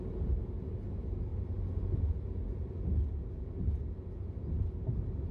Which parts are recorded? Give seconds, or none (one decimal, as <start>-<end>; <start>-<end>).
0.0-5.3